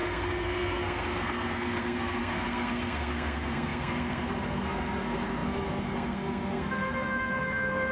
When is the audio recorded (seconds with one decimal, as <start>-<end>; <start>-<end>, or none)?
none